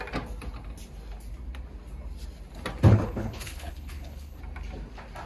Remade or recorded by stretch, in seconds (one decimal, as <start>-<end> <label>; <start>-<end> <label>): 0.0-2.9 recorded; 2.9-4.4 remade; 4.4-5.3 recorded